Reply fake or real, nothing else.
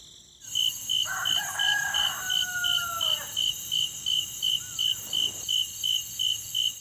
real